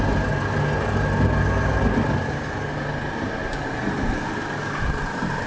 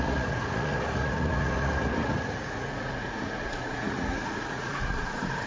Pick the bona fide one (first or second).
first